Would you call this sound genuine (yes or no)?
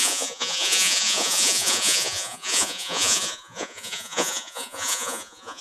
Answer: no